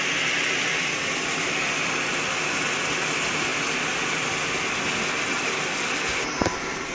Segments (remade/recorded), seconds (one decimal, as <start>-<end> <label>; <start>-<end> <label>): 0.0-6.9 recorded